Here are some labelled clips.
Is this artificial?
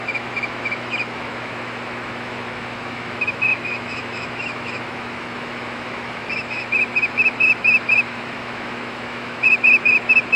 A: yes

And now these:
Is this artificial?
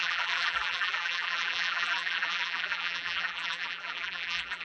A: yes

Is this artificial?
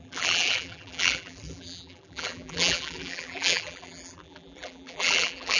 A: yes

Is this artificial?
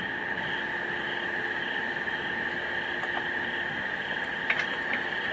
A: no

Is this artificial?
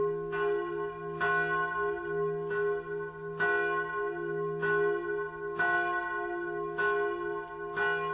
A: no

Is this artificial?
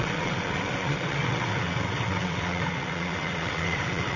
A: yes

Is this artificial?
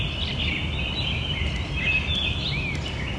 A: no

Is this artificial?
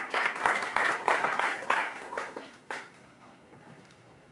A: yes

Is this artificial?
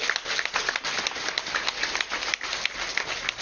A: no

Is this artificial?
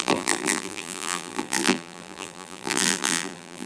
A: yes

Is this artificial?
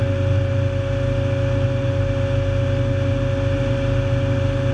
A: no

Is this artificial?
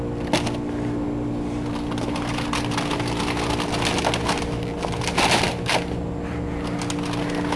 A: no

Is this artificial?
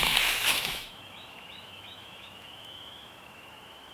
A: yes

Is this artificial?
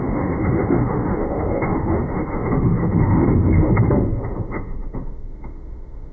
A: yes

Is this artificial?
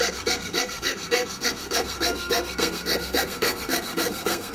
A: yes